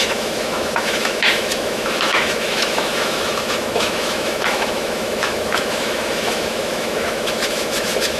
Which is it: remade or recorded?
remade